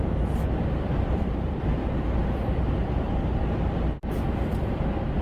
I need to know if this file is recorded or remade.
remade